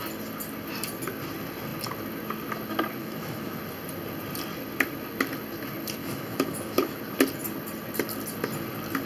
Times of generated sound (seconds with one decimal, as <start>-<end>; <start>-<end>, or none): 3.0-3.6; 6.0-7.0